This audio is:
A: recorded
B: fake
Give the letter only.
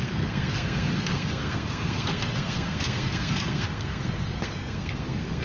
B